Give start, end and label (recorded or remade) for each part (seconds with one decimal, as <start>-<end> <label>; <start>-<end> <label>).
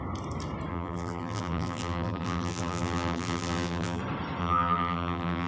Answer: 0.0-0.7 recorded; 0.7-4.0 remade; 4.0-4.4 recorded; 4.4-5.5 remade